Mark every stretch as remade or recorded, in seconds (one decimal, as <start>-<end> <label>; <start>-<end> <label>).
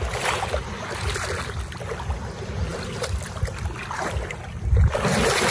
0.0-5.5 recorded